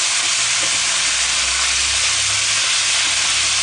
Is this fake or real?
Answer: real